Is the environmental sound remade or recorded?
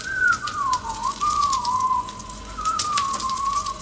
remade